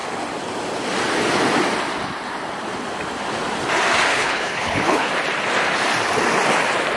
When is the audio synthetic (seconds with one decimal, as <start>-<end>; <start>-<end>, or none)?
4.1-5.1